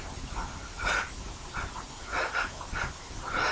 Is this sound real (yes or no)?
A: no